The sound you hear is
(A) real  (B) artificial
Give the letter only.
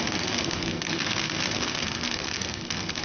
B